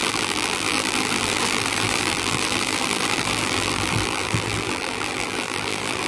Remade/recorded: remade